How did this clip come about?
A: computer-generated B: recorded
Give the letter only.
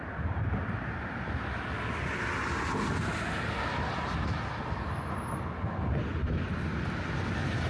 B